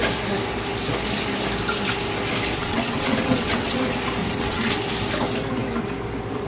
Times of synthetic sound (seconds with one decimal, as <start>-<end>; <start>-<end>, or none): 2.6-3.8; 4.2-4.8